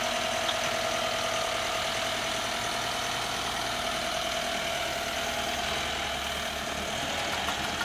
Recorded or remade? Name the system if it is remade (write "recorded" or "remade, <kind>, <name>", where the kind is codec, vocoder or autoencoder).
recorded